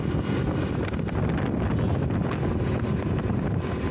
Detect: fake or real real